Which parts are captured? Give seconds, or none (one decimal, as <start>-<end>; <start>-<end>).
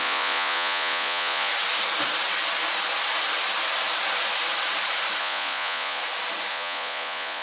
1.5-5.2; 6.0-6.5